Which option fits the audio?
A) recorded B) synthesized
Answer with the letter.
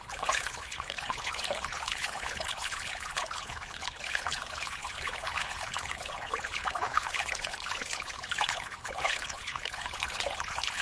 B